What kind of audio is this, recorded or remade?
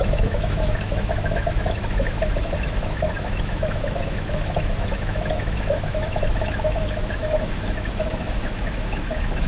remade